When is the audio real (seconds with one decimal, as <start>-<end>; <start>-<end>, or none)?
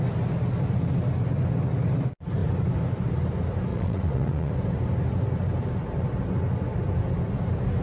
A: 0.0-3.7; 4.5-7.8